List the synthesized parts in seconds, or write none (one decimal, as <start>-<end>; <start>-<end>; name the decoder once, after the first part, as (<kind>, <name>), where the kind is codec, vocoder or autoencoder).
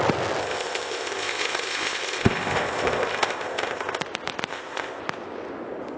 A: 0.4-4.0 (codec, ZipCodec); 4.5-5.0